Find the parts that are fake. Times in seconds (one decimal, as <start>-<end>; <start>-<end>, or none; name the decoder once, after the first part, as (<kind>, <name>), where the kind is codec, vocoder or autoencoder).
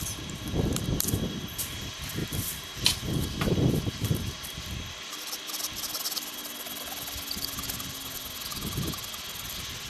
2.2-4.2 (vocoder, BigVGAN v2)